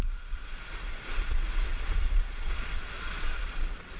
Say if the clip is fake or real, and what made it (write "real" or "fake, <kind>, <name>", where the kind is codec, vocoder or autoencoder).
fake, vocoder, Vocos